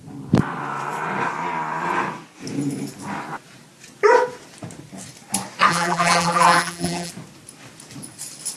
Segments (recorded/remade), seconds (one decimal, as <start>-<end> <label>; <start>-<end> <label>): 0.0-5.7 recorded; 5.7-7.1 remade; 7.1-8.6 recorded